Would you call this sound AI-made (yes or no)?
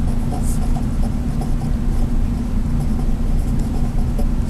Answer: no